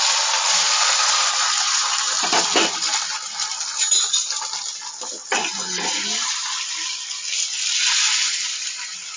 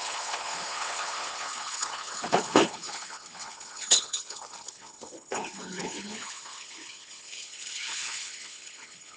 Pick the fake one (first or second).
second